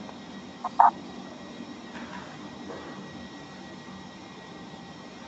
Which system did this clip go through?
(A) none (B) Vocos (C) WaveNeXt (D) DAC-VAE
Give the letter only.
A